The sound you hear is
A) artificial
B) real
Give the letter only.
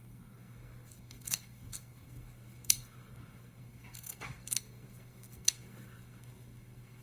A